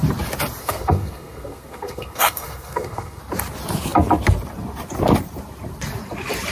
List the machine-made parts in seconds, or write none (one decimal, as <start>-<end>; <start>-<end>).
0.6-3.2